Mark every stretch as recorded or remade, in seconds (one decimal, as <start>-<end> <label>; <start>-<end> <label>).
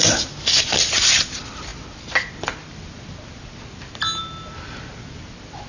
0.0-5.7 recorded